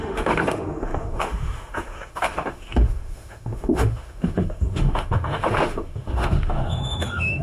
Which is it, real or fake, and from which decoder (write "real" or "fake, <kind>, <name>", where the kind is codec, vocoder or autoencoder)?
fake, autoencoder, DAC-VAE